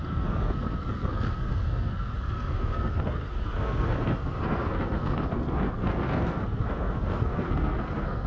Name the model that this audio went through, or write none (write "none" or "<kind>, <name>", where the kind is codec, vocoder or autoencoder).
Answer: codec, SNAC